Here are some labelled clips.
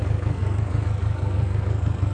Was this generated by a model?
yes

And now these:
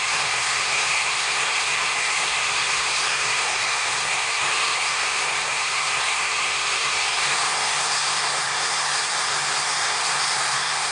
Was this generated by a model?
yes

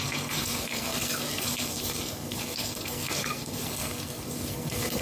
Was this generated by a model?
yes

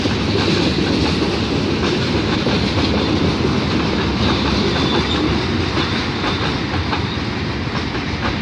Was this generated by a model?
no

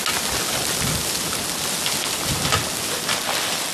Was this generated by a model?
no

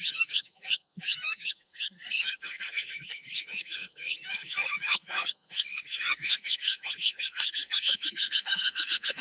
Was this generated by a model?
yes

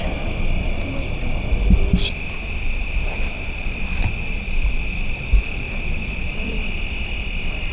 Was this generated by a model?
no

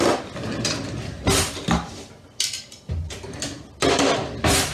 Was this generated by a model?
no